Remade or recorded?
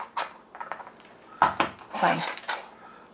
recorded